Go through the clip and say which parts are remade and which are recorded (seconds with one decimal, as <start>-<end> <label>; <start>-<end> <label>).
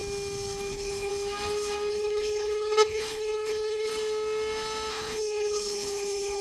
0.0-0.7 recorded; 0.7-1.1 remade; 1.1-1.9 recorded; 1.9-3.9 remade; 3.9-4.9 recorded; 4.9-6.4 remade